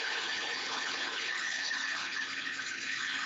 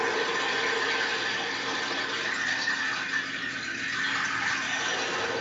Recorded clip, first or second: second